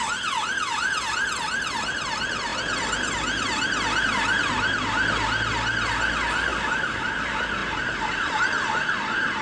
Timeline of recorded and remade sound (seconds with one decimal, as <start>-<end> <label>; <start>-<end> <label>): 0.0-7.6 recorded; 7.6-8.2 remade; 8.2-9.4 recorded